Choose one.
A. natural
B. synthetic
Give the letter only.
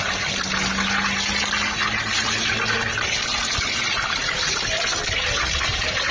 A